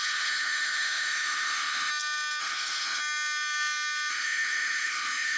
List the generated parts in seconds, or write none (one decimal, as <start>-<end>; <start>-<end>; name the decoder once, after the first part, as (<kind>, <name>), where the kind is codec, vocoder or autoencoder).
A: 0.0-1.9 (codec, HILCodec); 2.4-3.0; 4.1-5.4